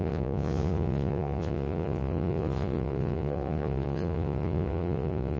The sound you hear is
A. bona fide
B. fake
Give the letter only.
B